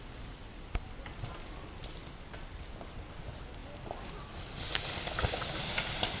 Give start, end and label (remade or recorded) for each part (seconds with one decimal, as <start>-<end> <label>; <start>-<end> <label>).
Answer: 0.0-6.2 recorded